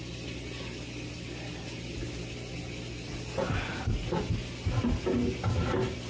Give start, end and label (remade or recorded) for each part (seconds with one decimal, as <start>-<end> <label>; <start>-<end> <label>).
0.0-6.1 recorded